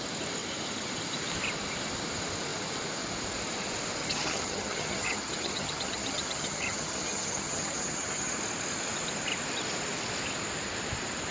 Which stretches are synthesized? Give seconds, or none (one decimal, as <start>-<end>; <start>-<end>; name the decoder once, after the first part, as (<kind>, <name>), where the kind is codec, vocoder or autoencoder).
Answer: 4.0-8.4 (vocoder, HiFi-GAN)

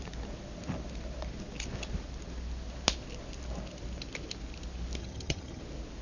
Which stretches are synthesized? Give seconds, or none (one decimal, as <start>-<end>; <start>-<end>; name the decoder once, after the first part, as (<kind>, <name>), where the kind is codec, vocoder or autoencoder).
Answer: 5.0-5.6 (vocoder, HiFi-GAN)

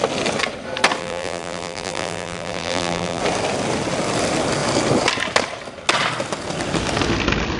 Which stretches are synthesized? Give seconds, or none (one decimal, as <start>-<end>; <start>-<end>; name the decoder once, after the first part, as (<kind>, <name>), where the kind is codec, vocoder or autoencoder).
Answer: 1.0-3.2 (vocoder, BigVGAN v2)

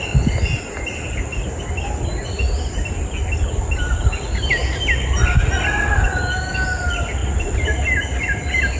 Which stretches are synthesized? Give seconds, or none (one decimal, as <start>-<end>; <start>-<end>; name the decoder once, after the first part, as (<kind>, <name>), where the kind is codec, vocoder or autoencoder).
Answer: none